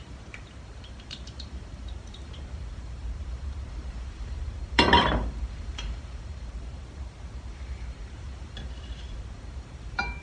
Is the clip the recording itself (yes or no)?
no